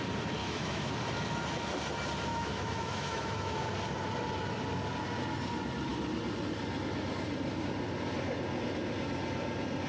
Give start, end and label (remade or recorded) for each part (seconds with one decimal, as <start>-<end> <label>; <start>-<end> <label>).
0.0-0.4 recorded; 0.4-0.9 remade; 0.9-2.3 recorded; 2.3-3.7 remade; 3.7-9.9 recorded

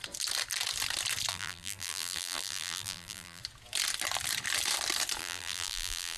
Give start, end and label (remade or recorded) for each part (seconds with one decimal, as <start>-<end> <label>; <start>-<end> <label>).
0.0-1.3 recorded; 1.3-3.4 remade; 3.4-5.2 recorded; 5.2-6.2 remade

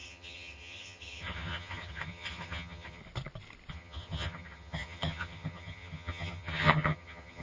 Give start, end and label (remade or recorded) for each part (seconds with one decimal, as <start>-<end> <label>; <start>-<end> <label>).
0.0-3.0 remade; 3.0-3.7 recorded; 3.7-7.4 remade

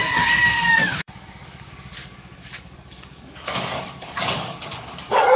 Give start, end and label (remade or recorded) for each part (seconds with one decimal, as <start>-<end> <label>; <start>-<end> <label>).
0.0-5.4 remade

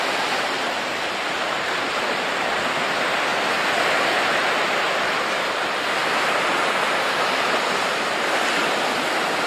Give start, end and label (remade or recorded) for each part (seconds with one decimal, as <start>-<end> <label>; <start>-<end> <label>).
0.0-3.3 remade; 3.3-4.2 recorded; 4.2-6.0 remade; 6.0-7.4 recorded; 7.4-9.5 remade

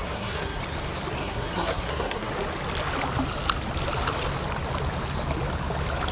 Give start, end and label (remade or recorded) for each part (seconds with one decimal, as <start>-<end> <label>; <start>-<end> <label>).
0.0-0.6 remade; 0.6-1.2 recorded; 1.2-2.3 remade; 2.3-6.1 recorded

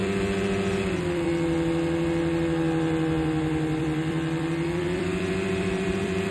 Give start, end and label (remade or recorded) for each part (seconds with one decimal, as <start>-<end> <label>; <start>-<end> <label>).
0.0-1.3 remade; 1.3-3.8 recorded; 3.8-6.3 remade

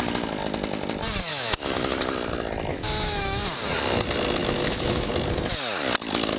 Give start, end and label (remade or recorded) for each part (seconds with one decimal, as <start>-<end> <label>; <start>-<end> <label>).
0.0-1.3 recorded; 1.3-2.0 remade; 2.0-2.7 recorded; 2.7-3.4 remade; 3.4-4.4 recorded; 4.4-5.1 remade; 5.1-6.4 recorded